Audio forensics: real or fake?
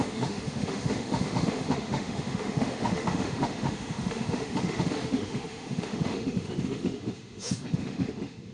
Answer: fake